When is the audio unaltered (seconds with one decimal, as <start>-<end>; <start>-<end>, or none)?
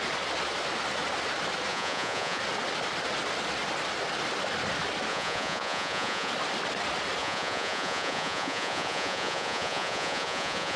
0.0-1.7; 2.4-5.1; 6.3-7.2